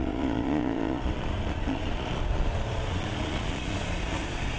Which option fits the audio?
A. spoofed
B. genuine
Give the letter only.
A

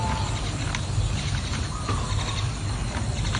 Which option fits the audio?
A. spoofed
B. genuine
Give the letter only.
B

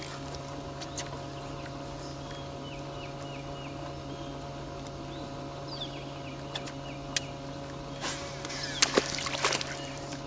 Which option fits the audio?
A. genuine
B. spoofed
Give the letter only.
A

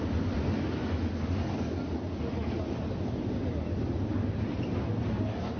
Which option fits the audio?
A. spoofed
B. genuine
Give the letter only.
B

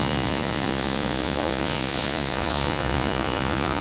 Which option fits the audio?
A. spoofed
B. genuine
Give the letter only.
A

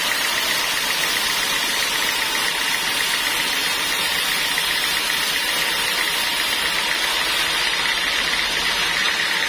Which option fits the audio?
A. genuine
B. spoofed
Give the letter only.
A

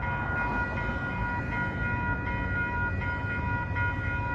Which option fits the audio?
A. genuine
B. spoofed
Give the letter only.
A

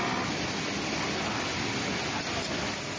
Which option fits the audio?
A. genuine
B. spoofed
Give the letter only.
A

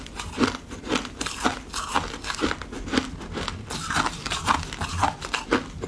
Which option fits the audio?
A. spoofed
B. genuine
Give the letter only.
B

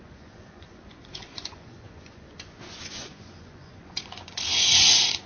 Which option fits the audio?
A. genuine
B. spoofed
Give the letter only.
B